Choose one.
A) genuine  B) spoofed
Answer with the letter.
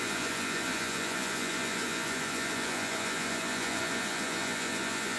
B